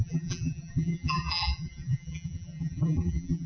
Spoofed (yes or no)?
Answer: yes